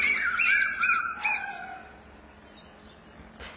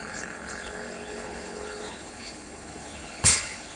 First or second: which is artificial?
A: second